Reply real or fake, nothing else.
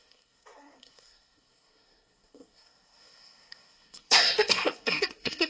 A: fake